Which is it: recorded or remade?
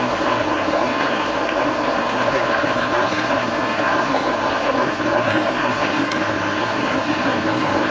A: remade